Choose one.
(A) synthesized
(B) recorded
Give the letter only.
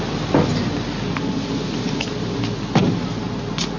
B